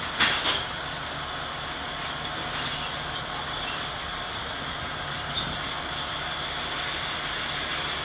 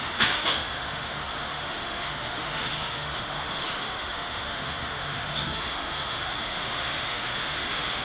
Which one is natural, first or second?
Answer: first